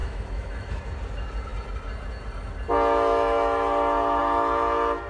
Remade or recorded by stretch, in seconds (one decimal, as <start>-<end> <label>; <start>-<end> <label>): 0.0-0.8 remade; 0.8-5.1 recorded